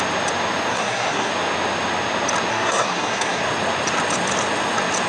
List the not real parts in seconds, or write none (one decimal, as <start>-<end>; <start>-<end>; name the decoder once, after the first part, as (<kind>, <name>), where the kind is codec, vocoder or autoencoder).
0.7-1.3 (codec, SNAC); 2.5-3.4